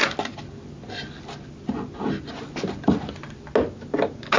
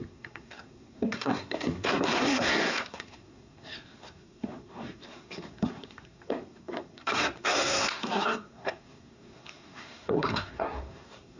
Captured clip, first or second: first